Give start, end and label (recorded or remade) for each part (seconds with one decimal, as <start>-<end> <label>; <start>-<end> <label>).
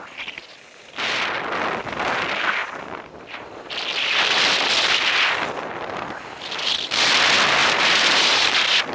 0.0-2.6 recorded; 2.6-3.7 remade; 3.7-7.6 recorded; 7.6-8.5 remade; 8.5-8.9 recorded